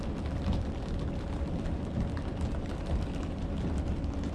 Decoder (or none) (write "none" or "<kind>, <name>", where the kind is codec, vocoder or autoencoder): none